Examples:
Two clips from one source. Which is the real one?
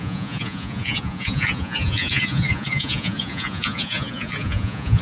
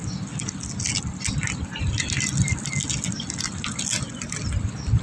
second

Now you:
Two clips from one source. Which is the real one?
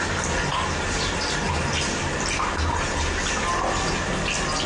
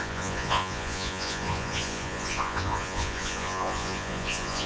first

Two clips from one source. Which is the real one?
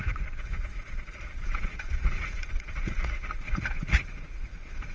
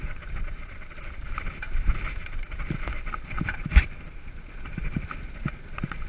second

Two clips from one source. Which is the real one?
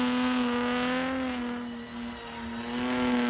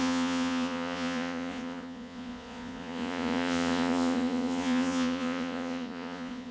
first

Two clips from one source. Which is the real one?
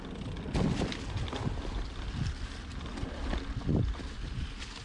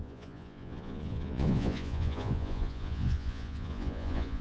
first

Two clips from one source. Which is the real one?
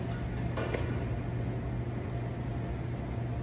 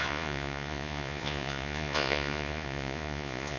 first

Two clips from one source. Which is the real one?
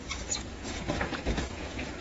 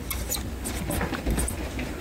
second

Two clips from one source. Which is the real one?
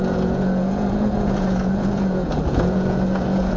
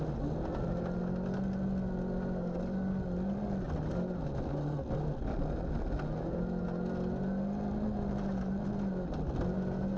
second